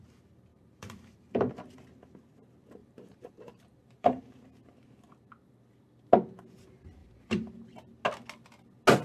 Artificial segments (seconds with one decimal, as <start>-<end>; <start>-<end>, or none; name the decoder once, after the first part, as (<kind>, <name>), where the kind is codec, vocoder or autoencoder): 0.5-1.5 (vocoder, BigVGAN v2); 2.8-4.2; 7.0-7.5